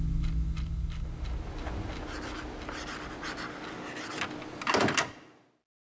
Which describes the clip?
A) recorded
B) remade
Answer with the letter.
A